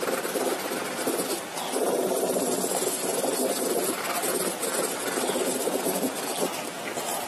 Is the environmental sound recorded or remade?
recorded